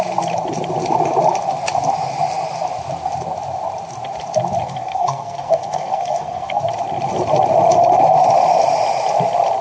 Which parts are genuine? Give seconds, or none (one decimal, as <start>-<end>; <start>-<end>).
0.0-4.6; 6.6-9.6